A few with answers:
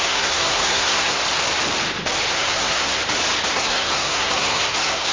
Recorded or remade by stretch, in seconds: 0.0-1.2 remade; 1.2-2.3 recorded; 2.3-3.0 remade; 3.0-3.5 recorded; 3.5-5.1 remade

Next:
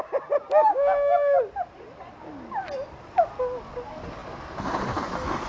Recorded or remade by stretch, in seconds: 0.0-0.7 recorded; 0.7-1.4 remade; 1.4-5.5 recorded

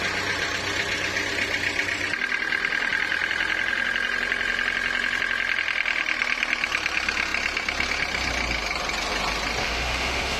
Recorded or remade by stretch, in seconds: 0.0-9.6 recorded; 9.6-10.4 remade

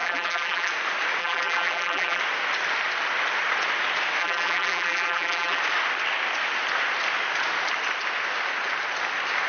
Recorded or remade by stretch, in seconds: 0.0-0.7 remade; 0.7-1.2 recorded; 1.2-2.2 remade; 2.2-4.2 recorded; 4.2-5.6 remade; 5.6-9.5 recorded

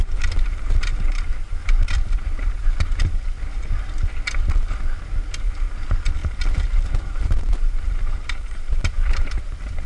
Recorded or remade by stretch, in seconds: 0.0-1.6 remade; 1.6-5.4 recorded; 5.4-9.9 remade